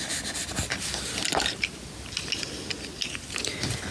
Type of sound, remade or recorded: recorded